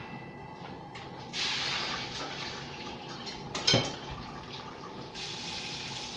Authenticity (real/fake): real